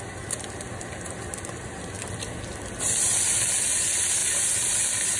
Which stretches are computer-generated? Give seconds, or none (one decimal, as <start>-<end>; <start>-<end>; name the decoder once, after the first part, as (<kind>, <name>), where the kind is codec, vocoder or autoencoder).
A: none